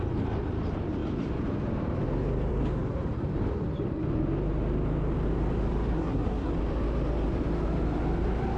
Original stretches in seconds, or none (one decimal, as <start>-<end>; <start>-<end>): 0.0-5.9; 6.5-8.6